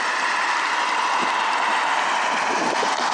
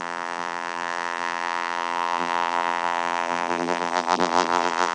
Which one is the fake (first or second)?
second